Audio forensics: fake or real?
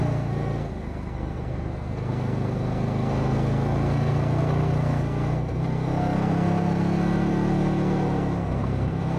fake